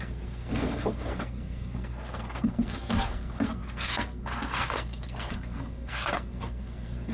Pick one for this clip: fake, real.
fake